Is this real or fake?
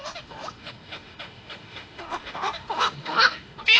fake